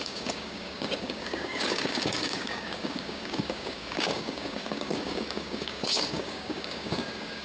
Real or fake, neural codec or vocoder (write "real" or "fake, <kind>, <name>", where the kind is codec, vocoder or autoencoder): fake, codec, DAC